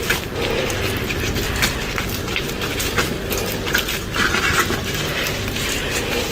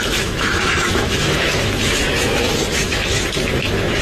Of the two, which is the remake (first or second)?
second